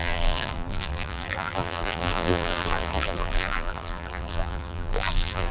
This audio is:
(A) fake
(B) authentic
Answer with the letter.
A